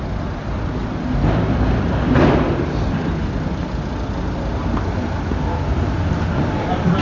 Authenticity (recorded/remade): recorded